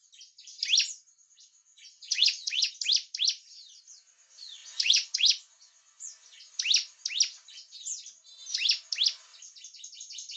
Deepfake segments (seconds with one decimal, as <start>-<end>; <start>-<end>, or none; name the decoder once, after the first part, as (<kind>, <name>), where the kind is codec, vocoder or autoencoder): 1.6-2.7 (vocoder, Vocos); 4.6-6.5